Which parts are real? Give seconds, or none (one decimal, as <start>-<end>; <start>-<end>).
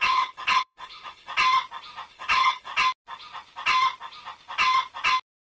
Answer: 1.3-2.1; 2.7-5.4